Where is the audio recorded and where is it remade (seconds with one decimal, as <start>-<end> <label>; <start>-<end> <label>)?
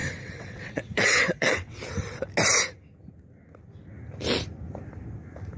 0.0-1.8 remade; 1.8-5.6 recorded